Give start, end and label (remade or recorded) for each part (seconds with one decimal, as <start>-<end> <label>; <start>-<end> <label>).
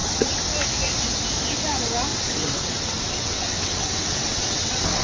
0.0-0.5 remade; 0.5-2.1 recorded; 2.1-5.0 remade